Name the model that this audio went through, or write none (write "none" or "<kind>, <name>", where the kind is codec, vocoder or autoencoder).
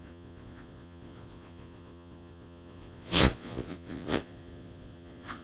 vocoder, Vocos